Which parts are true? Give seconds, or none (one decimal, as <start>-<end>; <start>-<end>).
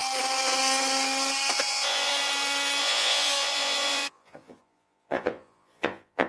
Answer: 0.0-1.7; 2.1-2.8